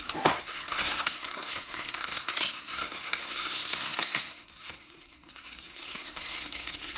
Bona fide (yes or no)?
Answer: no